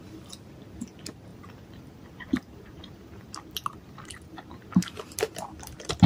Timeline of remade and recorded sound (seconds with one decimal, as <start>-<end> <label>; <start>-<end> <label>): 0.0-1.3 recorded; 1.3-5.0 remade; 5.0-6.1 recorded